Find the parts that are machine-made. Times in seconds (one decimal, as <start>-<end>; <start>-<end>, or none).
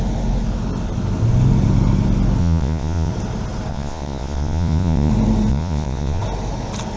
2.4-3.1; 3.7-5.1; 5.5-6.2